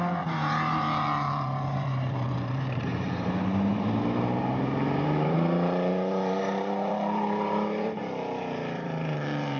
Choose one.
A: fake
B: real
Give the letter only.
A